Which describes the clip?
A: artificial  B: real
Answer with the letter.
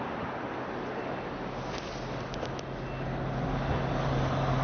B